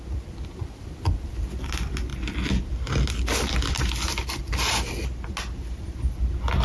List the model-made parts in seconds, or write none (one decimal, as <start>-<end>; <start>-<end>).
0.6-1.7